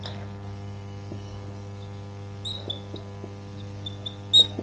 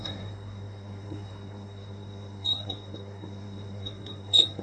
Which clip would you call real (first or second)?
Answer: first